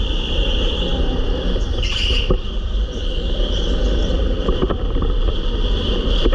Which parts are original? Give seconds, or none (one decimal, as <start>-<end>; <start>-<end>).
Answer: none